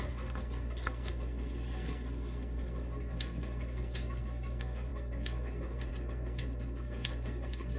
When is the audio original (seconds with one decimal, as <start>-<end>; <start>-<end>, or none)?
none